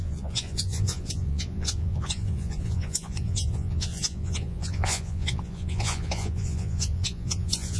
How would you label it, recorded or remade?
remade